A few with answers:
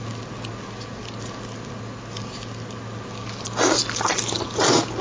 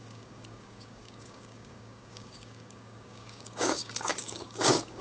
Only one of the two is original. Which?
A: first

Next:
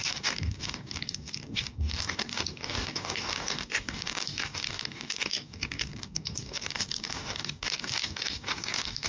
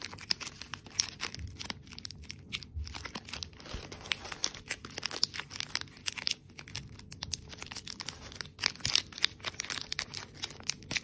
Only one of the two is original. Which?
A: second